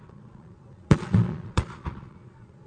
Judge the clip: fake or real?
fake